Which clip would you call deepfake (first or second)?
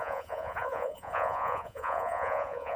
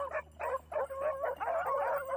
first